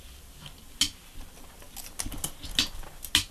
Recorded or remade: recorded